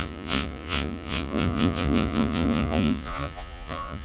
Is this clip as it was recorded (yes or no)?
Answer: no